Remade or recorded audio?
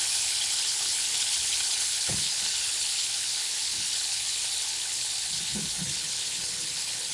remade